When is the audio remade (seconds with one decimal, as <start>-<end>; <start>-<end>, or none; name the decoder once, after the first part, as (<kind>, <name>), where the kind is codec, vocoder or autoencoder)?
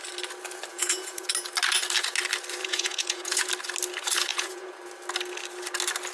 0.7-1.3 (vocoder, Vocos); 2.6-3.5; 4.3-4.8